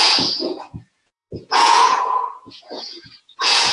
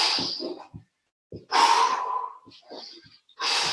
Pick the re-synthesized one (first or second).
first